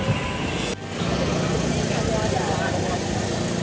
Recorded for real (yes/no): yes